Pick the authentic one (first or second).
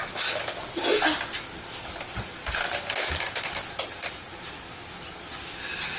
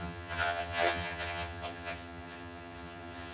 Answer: first